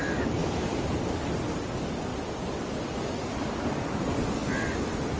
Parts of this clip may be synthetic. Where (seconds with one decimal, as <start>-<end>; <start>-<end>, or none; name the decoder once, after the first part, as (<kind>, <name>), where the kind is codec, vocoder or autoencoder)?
0.4-1.2 (vocoder, BigVGAN v2)